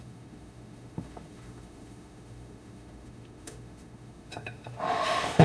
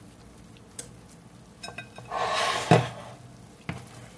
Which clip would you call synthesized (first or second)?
first